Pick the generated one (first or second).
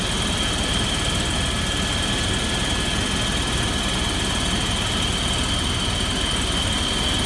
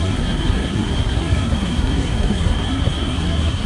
second